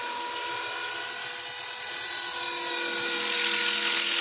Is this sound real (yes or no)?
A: yes